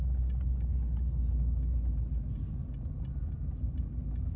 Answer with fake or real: real